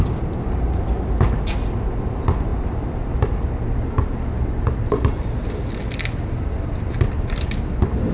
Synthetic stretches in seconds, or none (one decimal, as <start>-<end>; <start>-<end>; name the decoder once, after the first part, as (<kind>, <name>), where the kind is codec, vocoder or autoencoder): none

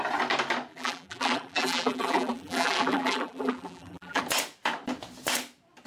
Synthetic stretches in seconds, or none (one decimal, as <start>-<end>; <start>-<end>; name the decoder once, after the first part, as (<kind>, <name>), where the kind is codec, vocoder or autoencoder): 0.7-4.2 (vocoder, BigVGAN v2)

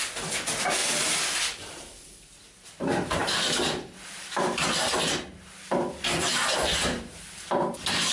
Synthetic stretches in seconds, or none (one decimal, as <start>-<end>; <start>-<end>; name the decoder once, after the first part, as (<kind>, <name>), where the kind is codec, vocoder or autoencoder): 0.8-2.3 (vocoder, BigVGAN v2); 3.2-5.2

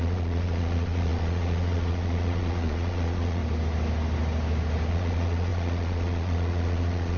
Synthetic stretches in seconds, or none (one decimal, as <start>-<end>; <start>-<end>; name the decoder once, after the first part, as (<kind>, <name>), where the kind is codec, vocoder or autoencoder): 0.0-3.4 (vocoder, Vocos); 4.9-7.2

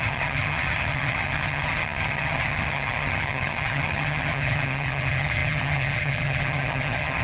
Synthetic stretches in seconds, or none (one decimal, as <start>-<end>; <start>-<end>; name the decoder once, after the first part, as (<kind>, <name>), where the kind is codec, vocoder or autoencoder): 0.0-7.2 (vocoder, HiFi-GAN)

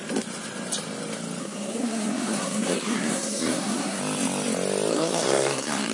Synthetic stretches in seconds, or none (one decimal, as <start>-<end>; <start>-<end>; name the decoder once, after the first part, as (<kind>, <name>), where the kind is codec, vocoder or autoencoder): 1.4-4.0 (codec, SNAC); 4.9-5.9